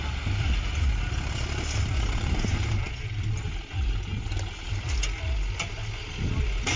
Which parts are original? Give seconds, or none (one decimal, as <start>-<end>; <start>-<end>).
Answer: 0.0-6.8